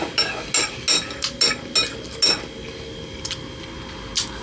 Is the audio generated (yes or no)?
no